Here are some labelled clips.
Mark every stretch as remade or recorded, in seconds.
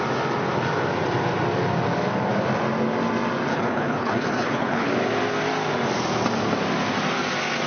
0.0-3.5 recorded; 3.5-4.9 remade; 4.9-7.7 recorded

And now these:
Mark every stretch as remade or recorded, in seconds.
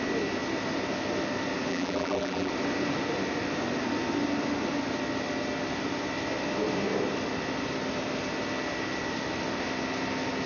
0.0-1.7 recorded; 1.7-2.5 remade; 2.5-10.5 recorded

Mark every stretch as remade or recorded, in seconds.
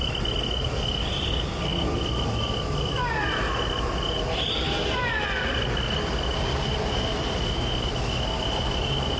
0.0-9.2 recorded